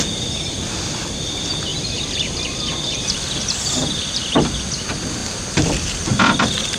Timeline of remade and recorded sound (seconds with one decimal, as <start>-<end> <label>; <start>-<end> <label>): 0.0-1.7 recorded; 1.7-4.4 remade; 4.4-6.8 recorded